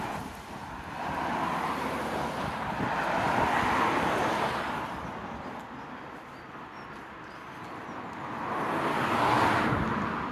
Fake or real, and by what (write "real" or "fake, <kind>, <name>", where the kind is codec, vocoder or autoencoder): real